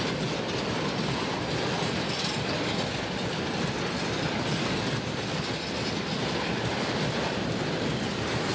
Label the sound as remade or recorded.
recorded